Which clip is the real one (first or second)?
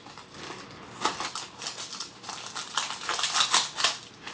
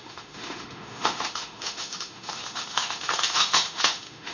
first